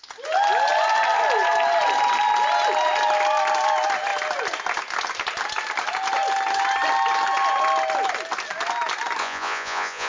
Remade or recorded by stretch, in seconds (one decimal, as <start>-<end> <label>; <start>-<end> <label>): 0.0-9.2 recorded; 9.2-10.1 remade